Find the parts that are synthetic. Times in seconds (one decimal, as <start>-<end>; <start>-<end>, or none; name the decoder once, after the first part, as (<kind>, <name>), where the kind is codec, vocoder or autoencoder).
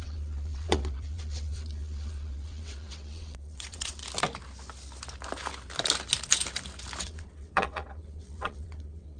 0.0-4.0 (vocoder, WaveNeXt); 7.0-9.2